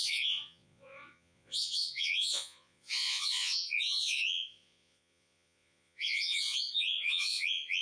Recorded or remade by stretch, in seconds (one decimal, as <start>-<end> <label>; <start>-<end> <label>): 0.0-7.8 remade